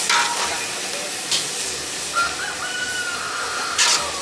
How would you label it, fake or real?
real